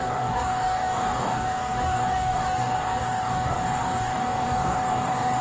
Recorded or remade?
remade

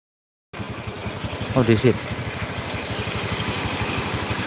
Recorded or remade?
recorded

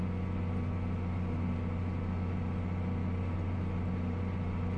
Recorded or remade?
recorded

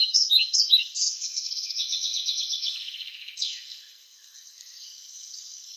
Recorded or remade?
remade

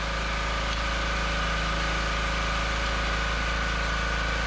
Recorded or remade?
recorded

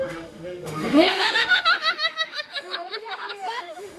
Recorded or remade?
remade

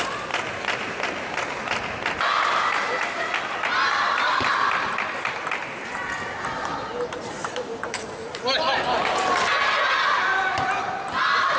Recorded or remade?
recorded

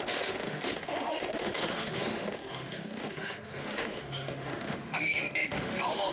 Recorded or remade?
remade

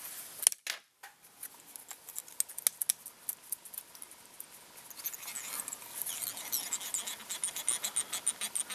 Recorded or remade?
recorded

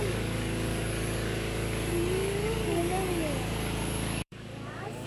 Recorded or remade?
remade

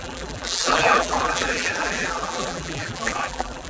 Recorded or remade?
remade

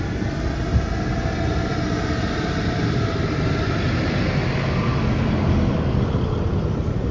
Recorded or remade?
recorded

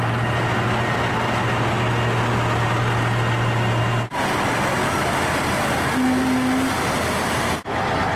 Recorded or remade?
recorded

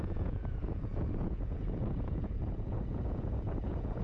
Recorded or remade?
remade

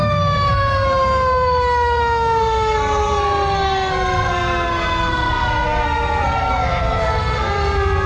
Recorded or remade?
remade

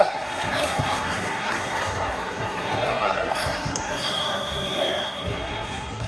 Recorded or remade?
remade